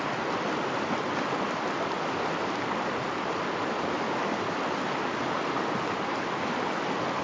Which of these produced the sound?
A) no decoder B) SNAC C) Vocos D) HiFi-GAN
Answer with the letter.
A